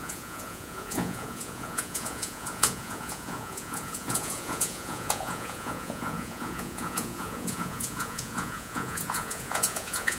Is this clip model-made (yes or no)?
yes